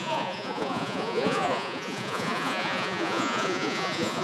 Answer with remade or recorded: remade